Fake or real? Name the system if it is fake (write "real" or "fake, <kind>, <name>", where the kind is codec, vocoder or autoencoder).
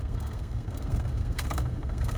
fake, codec, SNAC